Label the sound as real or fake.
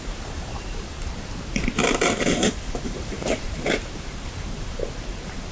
fake